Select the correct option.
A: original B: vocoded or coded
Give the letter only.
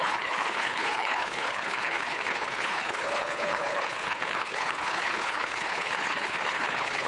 B